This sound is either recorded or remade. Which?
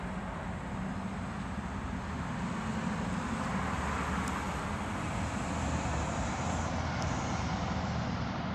recorded